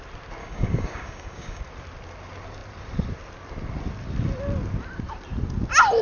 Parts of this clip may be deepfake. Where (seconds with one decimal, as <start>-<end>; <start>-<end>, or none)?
0.4-1.6